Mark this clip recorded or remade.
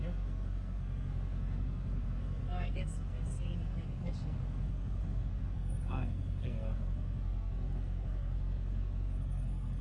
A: remade